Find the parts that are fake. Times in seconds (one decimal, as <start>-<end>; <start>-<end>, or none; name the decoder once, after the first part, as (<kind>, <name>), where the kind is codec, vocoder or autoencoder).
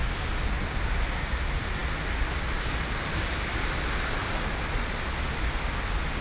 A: none